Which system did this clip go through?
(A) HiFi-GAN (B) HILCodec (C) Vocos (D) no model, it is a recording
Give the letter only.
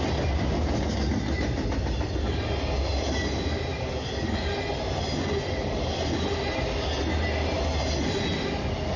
D